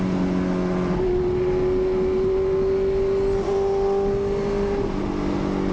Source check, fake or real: real